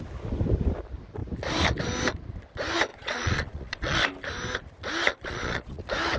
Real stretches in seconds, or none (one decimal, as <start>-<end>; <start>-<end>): 0.0-2.9; 4.0-5.1; 5.8-6.2